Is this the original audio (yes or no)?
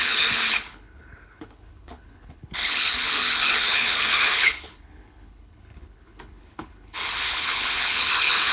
no